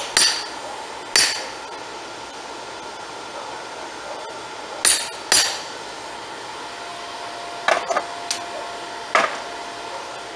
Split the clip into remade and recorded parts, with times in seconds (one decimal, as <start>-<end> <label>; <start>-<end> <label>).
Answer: 0.0-10.4 recorded